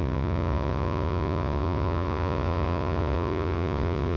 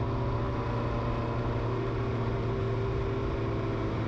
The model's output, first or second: first